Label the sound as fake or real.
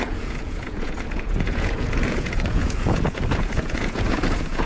fake